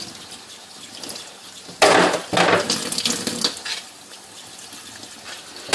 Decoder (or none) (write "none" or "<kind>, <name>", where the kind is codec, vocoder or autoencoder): none